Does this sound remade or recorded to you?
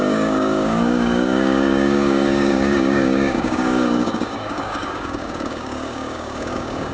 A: remade